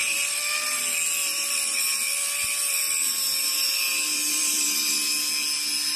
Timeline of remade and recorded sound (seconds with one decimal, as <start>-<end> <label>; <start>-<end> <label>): 0.0-0.8 remade; 0.8-1.3 recorded; 1.3-4.9 remade; 4.9-6.0 recorded